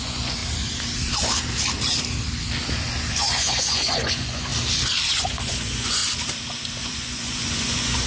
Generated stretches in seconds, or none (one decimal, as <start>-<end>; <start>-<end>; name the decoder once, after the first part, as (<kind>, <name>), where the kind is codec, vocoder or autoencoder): 0.0-0.4 (vocoder, Vocos); 3.1-4.5; 5.1-6.0; 6.8-8.1